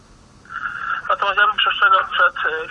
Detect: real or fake real